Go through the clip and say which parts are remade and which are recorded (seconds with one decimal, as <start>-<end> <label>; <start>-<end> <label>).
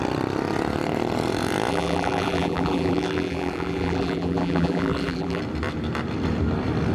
0.0-1.7 recorded; 1.7-5.4 remade; 5.4-6.9 recorded